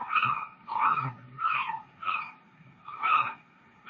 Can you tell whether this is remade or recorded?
remade